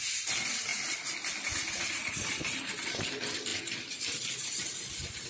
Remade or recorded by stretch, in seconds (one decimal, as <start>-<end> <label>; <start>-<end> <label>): 0.0-5.3 recorded